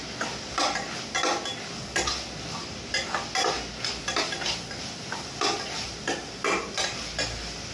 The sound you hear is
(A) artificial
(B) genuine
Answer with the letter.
B